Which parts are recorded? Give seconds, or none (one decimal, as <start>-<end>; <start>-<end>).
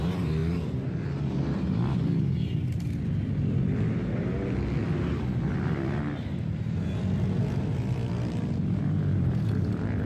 0.0-10.1